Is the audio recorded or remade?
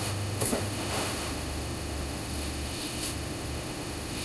remade